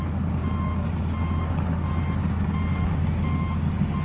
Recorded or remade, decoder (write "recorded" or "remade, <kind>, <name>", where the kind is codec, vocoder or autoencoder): recorded